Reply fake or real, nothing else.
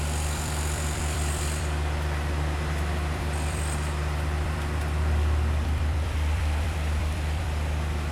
fake